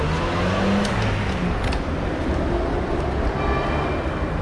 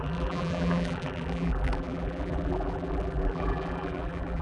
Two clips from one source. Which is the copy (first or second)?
second